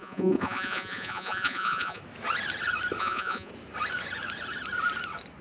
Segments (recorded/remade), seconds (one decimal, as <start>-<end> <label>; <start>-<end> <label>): 0.0-2.0 remade; 2.0-3.0 recorded; 3.0-3.5 remade; 3.5-5.4 recorded